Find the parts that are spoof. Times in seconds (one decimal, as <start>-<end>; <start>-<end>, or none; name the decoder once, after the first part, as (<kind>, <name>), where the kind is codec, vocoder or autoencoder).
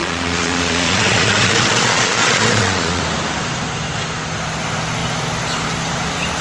0.0-3.0 (vocoder, Vocos)